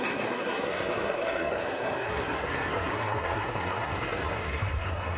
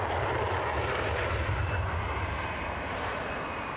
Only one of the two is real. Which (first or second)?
second